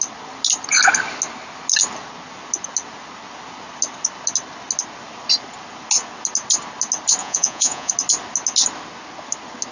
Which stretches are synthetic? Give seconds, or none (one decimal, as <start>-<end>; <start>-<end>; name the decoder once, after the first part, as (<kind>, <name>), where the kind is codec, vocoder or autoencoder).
7.2-7.9 (vocoder, Vocos)